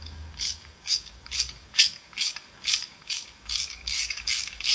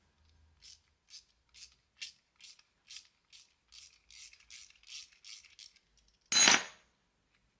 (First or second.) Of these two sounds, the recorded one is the second